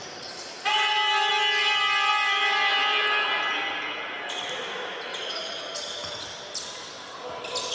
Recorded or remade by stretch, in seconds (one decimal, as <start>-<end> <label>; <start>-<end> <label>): 0.0-5.1 recorded; 5.1-5.6 remade; 5.6-7.7 recorded